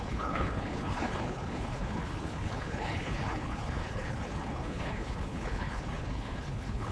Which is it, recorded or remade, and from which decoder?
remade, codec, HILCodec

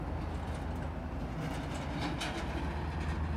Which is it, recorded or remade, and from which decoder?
recorded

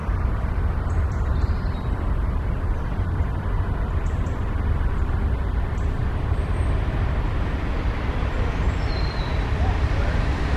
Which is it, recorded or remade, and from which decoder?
remade, vocoder, BigVGAN v2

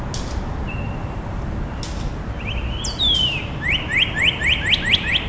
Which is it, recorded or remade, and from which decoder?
recorded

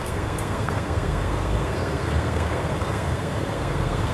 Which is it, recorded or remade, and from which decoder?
remade, codec, SNAC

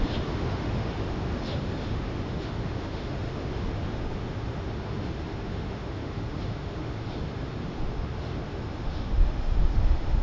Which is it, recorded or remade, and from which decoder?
remade, autoencoder, DAC-VAE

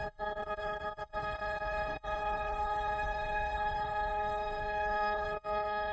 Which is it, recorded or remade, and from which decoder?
remade, codec, HILCodec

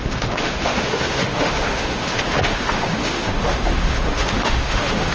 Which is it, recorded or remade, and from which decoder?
remade, autoencoder, DAC-VAE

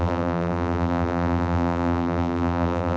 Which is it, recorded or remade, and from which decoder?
remade, vocoder, BigVGAN v2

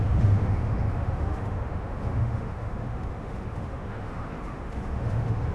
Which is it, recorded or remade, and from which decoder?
remade, autoencoder, DAC-VAE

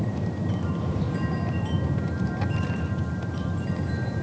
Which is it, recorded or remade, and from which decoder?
remade, vocoder, BigVGAN v2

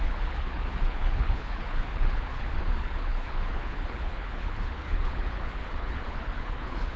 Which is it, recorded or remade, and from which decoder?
remade, codec, HILCodec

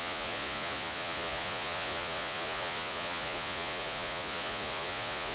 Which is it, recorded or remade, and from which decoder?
remade, vocoder, Vocos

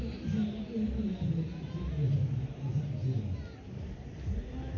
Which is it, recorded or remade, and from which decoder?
recorded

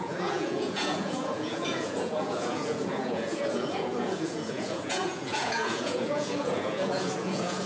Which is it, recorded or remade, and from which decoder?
remade, vocoder, Vocos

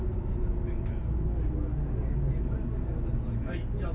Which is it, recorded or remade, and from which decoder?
recorded